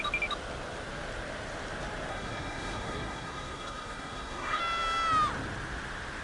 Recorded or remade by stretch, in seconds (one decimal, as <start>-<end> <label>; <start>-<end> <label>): 0.0-2.1 recorded; 2.1-4.6 remade; 4.6-6.2 recorded